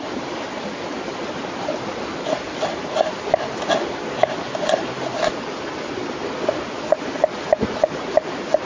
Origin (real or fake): real